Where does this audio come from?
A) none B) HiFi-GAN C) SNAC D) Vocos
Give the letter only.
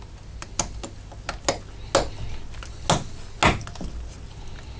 A